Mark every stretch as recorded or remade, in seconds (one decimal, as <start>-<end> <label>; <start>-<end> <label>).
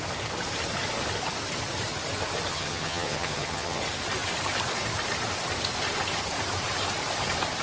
0.0-2.5 recorded; 2.5-3.8 remade; 3.8-7.6 recorded